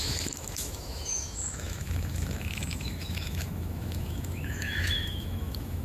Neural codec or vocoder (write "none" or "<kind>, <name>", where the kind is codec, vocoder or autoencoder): autoencoder, DAC-VAE